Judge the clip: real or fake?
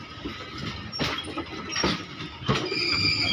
real